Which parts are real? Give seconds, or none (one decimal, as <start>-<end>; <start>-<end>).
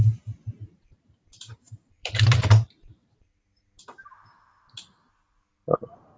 3.7-6.2